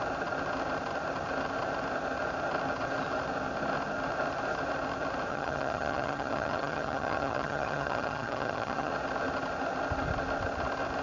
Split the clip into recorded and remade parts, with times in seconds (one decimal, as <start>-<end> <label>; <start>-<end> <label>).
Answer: 0.0-5.3 recorded; 5.3-8.9 remade; 8.9-11.0 recorded